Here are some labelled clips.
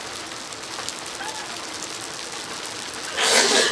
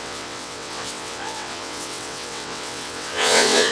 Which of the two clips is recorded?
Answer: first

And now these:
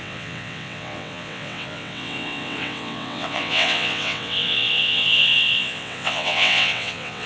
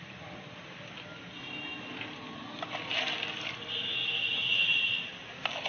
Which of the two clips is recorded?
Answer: second